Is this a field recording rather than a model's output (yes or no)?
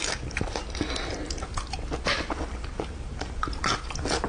yes